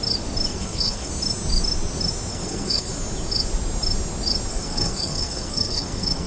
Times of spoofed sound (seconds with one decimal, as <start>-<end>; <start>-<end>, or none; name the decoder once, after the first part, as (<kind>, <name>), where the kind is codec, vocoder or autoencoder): 0.5-1.1 (codec, SNAC); 2.3-2.9; 4.5-6.3